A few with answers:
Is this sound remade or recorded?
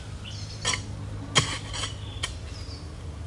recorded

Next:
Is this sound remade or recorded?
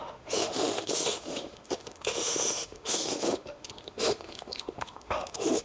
remade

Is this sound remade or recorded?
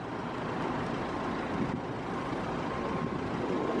recorded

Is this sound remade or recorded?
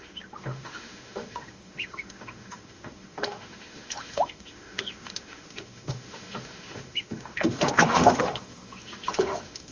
remade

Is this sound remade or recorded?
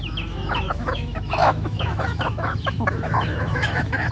remade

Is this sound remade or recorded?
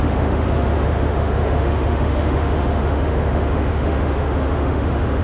remade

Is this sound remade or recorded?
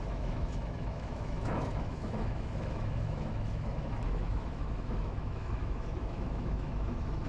remade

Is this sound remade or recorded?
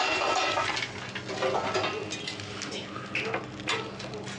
recorded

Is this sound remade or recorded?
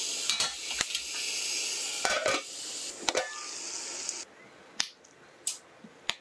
recorded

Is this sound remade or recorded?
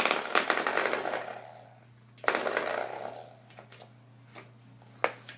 recorded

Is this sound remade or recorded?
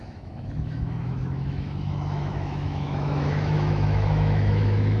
remade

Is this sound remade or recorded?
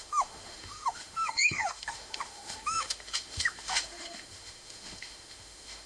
remade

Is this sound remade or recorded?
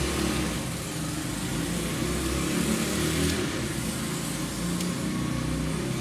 recorded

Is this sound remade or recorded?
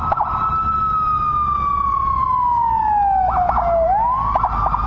recorded